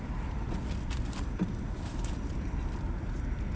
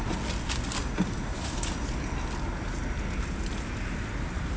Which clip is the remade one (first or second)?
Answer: first